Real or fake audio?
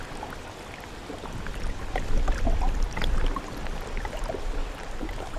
real